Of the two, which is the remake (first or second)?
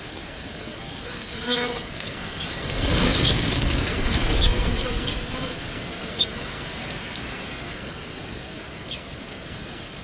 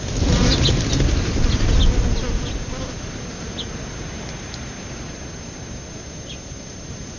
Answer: first